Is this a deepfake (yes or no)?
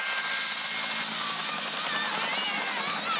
no